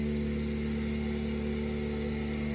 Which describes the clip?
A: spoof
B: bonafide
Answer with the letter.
B